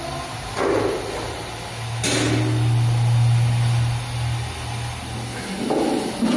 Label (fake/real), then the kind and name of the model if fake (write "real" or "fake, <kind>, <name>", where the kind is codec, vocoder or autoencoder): real